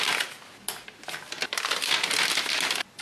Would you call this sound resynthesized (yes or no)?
no